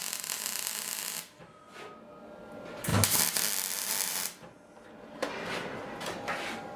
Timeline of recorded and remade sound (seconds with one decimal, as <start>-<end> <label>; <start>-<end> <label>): 0.0-6.8 recorded